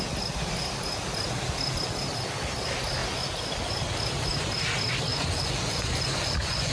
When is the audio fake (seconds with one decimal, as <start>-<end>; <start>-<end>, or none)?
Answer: 5.1-6.7